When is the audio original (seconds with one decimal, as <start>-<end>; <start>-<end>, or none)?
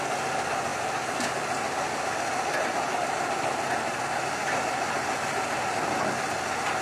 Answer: 0.0-6.8